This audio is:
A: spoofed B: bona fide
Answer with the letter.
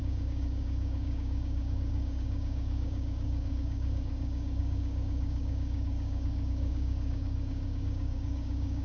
A